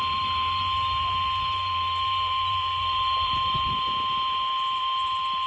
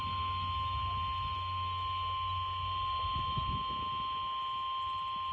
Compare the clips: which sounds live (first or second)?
second